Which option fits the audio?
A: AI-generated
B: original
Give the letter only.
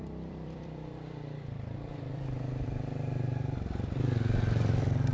A